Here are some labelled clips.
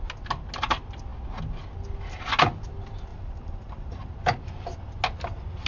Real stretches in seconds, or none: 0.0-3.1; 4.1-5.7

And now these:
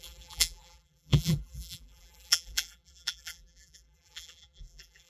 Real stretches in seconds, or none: none

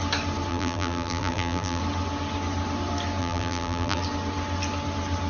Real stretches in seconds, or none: 0.0-0.5; 1.8-3.2; 4.0-5.3

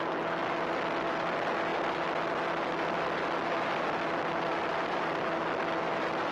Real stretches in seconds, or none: 0.0-6.3

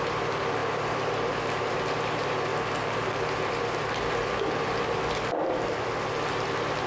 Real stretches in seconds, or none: 2.5-3.1

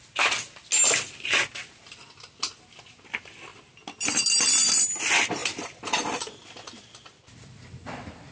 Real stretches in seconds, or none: 0.0-5.4; 6.7-8.3

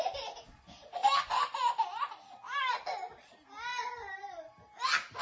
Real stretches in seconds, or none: 0.0-3.7; 4.4-5.2

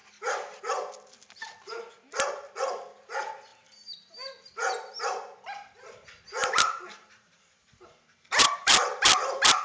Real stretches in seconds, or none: 0.0-6.4; 8.7-9.6